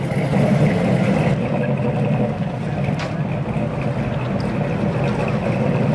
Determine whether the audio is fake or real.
real